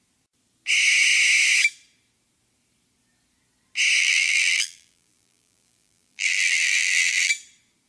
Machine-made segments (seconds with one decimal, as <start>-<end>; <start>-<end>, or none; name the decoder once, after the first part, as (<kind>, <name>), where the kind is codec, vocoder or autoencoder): 4.0-7.3 (vocoder, BigVGAN v2)

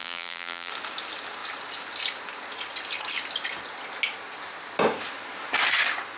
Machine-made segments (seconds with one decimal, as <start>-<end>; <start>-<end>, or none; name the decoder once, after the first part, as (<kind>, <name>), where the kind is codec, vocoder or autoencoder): 0.0-0.7 (vocoder, BigVGAN v2)

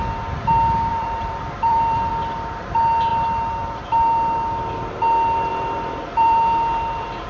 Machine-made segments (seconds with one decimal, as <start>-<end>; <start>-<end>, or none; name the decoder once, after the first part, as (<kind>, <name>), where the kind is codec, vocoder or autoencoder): 0.9-2.1 (vocoder, BigVGAN v2); 5.5-7.3

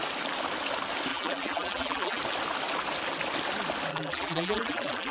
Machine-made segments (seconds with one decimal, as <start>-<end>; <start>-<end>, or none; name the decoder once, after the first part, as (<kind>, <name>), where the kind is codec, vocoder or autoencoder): 1.1-2.2 (vocoder, BigVGAN v2); 3.9-5.1

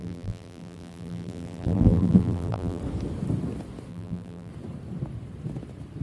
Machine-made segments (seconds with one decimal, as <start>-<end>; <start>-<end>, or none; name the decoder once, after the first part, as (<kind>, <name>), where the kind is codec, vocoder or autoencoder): 0.0-2.8 (vocoder, BigVGAN v2); 3.9-4.5

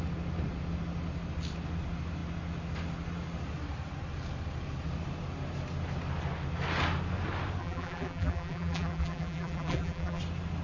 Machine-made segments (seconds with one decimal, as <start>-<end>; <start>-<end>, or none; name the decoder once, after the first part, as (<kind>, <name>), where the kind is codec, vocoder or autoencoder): 7.6-10.2 (vocoder, BigVGAN v2)

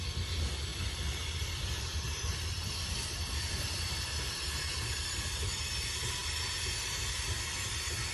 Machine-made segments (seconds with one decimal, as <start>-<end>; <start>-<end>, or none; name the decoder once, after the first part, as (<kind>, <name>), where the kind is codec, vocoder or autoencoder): 0.7-5.6 (vocoder, BigVGAN v2)